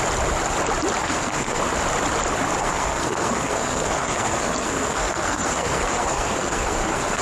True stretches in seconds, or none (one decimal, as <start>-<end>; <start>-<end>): 0.0-1.0; 1.6-2.6